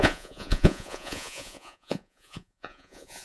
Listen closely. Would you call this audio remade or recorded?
remade